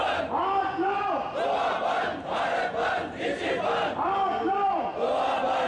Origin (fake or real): real